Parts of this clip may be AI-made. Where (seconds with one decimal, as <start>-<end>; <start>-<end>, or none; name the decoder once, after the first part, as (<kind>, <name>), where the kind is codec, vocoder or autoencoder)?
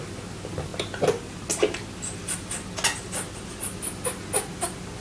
none